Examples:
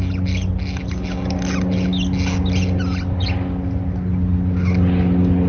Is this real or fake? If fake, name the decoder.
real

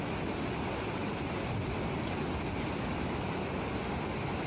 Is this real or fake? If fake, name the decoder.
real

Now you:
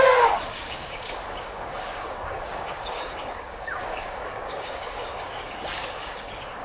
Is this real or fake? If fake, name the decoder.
fake, codec, DAC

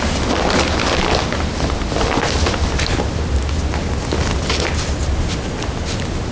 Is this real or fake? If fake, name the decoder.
real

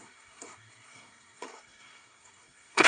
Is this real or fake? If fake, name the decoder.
fake, codec, SNAC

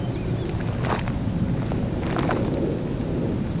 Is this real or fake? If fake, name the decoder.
real